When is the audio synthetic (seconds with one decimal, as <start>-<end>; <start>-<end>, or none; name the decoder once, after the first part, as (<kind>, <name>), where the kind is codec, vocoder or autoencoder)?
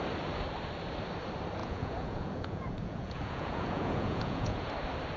1.6-4.7 (vocoder, Vocos)